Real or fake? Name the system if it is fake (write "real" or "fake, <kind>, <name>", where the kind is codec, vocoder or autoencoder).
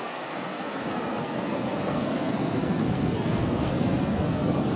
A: fake, codec, SNAC